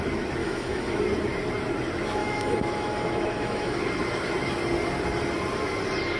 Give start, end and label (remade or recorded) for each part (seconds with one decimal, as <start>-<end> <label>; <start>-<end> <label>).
0.0-0.4 recorded; 0.4-1.0 remade; 1.0-2.2 recorded; 2.2-3.8 remade; 3.8-6.2 recorded